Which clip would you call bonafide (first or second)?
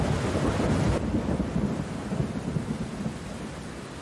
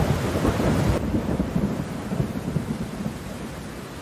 first